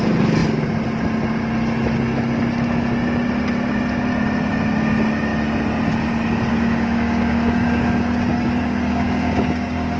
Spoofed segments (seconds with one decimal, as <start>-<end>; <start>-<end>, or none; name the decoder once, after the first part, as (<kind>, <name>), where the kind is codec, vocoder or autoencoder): 6.5-10.0 (codec, DAC)